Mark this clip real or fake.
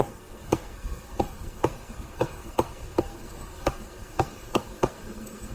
fake